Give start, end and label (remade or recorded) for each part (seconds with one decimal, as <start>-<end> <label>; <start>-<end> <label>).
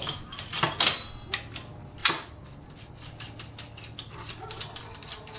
0.0-5.4 recorded